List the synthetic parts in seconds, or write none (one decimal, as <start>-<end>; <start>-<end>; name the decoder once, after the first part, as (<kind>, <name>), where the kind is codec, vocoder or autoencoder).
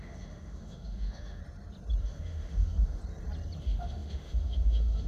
0.0-1.4 (autoencoder, DAC-VAE); 2.0-3.0; 3.6-5.1